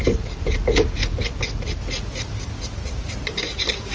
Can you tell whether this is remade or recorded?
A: recorded